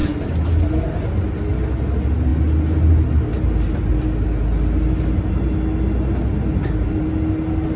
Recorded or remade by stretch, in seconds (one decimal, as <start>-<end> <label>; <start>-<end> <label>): 0.0-7.8 recorded